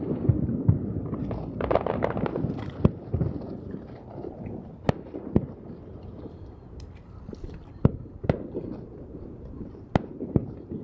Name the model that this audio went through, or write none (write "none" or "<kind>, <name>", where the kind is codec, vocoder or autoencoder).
none